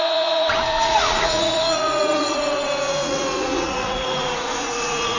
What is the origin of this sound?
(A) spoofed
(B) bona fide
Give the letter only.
A